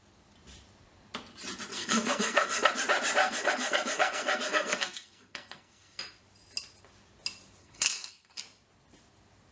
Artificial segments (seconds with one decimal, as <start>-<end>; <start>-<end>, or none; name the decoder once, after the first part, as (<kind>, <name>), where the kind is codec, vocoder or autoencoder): 1.7-2.7 (codec, SNAC); 3.2-6.0; 7.6-8.4

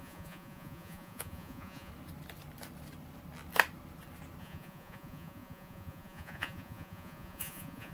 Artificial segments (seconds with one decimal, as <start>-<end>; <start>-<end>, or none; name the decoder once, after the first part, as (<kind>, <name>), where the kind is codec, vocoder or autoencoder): 0.0-1.9 (vocoder, Vocos); 4.4-7.9

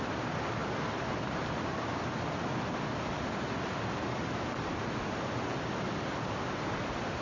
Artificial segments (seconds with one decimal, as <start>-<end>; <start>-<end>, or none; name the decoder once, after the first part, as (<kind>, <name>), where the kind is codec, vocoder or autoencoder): none

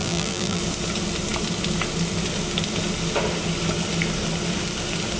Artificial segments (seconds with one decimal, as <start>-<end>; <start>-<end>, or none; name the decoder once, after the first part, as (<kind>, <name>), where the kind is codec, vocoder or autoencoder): 0.0-0.6 (vocoder, BigVGAN v2)